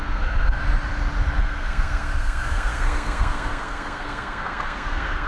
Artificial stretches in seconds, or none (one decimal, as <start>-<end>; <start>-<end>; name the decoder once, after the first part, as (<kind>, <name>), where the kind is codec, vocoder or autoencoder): 0.0-0.6 (codec, SNAC); 1.4-5.3